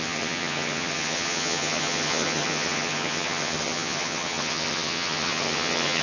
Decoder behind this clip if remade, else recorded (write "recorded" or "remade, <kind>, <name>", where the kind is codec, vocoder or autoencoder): remade, vocoder, HiFi-GAN